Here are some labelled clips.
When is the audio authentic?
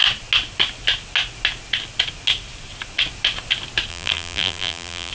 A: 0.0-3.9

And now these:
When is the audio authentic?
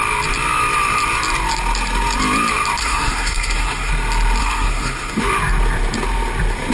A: 0.0-2.8; 3.9-4.4; 5.2-6.7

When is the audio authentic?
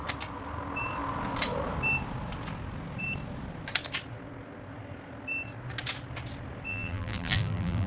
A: 0.0-6.7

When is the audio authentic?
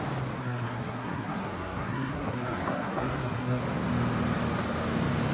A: 0.0-0.4; 3.6-5.3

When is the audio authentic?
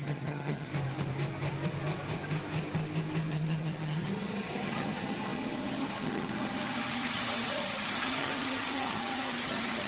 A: 0.7-3.3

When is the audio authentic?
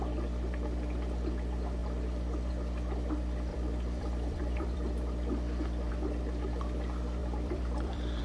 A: 0.0-3.5; 5.9-7.2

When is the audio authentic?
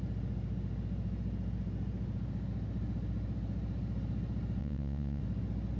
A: 0.0-4.6; 5.2-5.8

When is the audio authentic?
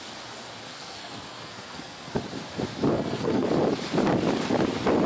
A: 0.0-0.7; 2.1-2.9; 3.5-5.1